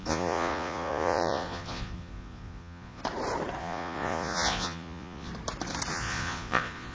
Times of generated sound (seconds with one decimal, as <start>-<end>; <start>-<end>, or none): 0.0-3.0; 3.6-5.3; 5.9-6.9

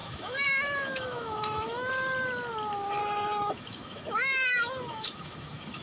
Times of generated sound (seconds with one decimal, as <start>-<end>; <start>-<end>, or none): 0.0-1.9; 3.0-5.8

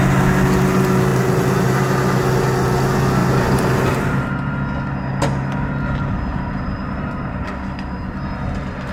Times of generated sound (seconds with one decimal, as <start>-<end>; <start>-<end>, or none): 1.1-1.8; 3.2-4.5; 6.3-8.3

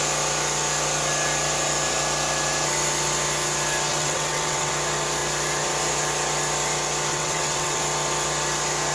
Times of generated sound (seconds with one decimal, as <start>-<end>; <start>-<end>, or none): 3.9-4.7; 7.1-7.8

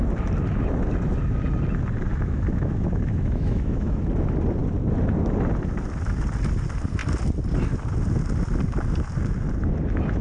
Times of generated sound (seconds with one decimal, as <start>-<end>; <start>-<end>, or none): 2.1-4.0

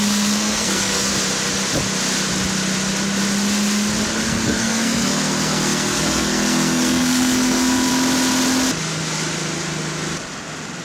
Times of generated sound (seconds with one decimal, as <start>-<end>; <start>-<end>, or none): 0.0-1.1; 4.2-7.9

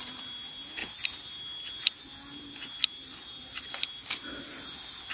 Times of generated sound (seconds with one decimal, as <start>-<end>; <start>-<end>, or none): none

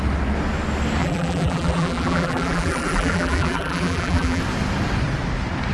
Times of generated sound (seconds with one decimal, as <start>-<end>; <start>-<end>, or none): 1.0-4.4